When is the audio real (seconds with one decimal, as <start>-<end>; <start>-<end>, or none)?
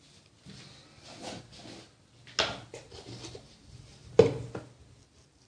0.0-2.7; 4.1-5.5